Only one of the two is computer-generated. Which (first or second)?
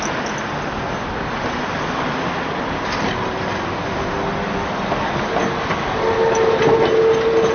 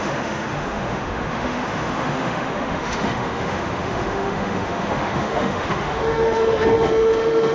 second